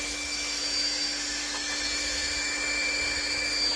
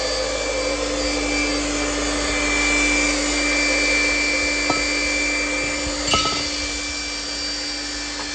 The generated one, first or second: first